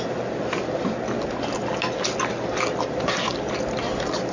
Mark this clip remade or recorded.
recorded